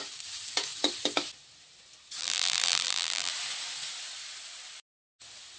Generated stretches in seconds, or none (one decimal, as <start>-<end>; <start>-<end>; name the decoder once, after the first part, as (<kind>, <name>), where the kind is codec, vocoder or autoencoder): 2.2-3.3 (vocoder, BigVGAN v2)